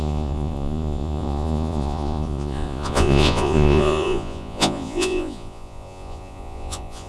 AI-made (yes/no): yes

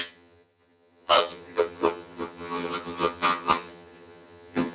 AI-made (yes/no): yes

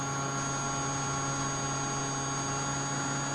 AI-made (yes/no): no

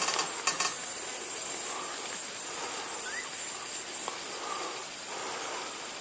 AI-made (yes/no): no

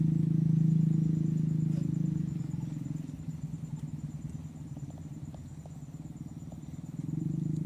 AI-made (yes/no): no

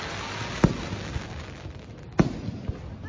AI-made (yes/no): no